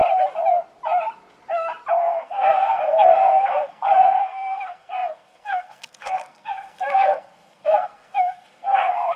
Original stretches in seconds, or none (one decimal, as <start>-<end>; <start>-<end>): 0.0-2.0